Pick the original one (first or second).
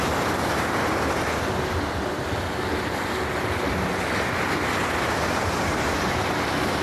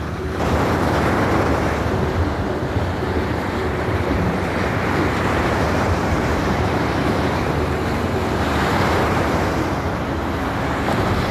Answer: first